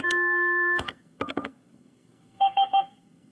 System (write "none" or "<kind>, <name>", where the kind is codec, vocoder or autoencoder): codec, SNAC